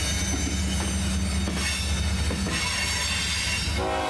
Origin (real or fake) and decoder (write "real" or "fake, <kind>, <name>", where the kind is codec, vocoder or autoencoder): real